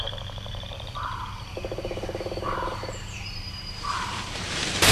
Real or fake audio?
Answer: fake